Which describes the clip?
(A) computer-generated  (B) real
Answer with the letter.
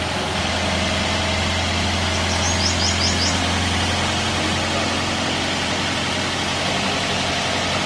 B